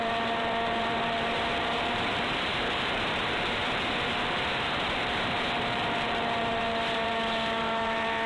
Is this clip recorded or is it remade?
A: remade